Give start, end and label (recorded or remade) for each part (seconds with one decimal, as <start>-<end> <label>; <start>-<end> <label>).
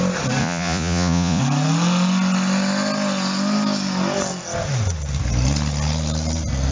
0.0-0.4 recorded; 0.4-1.4 remade; 1.4-6.7 recorded